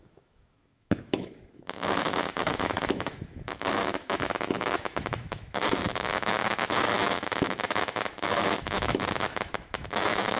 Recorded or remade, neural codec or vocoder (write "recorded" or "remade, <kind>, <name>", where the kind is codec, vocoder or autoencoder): remade, autoencoder, DAC-VAE